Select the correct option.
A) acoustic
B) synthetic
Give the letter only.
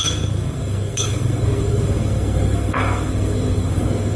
B